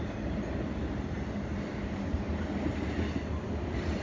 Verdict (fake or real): real